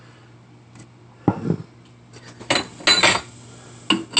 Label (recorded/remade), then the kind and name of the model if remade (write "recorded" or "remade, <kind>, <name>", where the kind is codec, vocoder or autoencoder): recorded